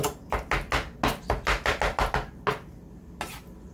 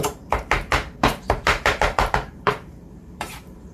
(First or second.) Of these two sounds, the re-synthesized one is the second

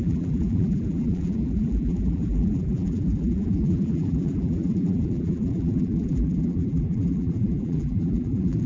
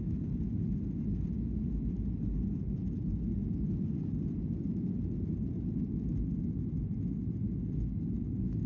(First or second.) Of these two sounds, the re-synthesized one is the first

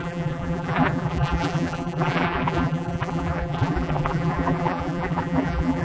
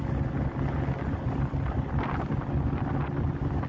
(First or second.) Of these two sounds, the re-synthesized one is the first